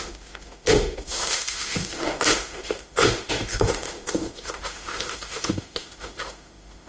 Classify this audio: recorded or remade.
remade